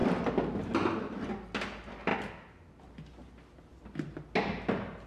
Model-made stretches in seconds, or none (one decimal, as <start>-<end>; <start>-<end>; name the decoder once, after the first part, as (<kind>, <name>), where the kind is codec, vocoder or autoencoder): none